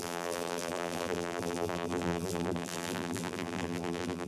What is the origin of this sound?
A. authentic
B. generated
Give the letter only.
B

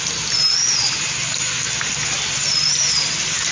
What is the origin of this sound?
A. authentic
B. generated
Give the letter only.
A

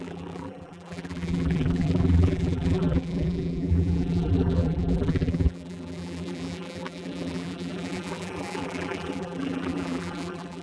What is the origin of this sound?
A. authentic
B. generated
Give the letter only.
B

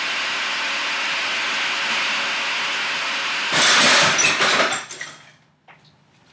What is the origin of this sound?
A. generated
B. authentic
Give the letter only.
B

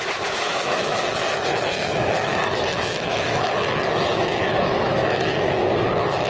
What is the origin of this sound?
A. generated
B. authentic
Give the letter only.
A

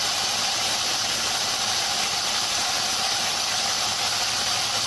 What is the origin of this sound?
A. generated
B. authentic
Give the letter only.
B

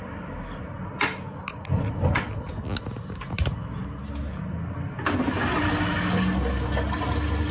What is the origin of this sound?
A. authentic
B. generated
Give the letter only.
A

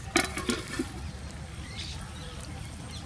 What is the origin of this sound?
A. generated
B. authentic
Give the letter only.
B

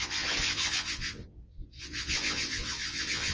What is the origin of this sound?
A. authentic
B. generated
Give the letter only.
B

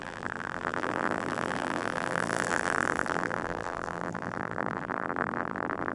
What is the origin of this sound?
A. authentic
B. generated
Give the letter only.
B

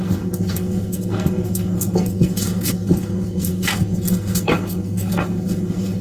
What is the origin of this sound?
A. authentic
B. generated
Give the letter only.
B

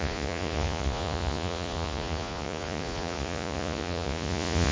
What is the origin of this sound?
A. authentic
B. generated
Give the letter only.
B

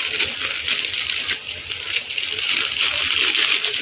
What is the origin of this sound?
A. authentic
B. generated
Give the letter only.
A